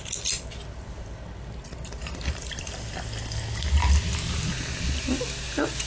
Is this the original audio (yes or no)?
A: yes